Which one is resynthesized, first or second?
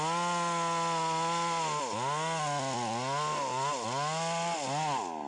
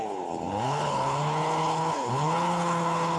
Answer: second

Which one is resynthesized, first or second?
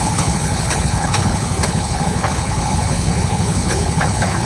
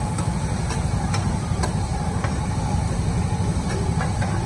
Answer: first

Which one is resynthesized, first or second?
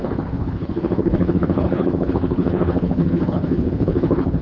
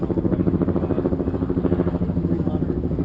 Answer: first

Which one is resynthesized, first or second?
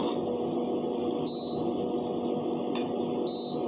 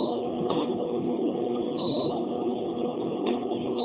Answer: second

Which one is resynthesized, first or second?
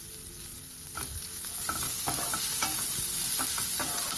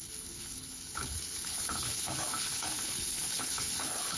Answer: second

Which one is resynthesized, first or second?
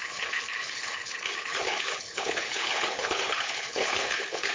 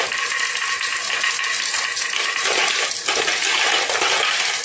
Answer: first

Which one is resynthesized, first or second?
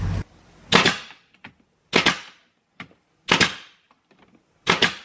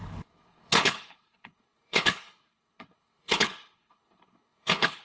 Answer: second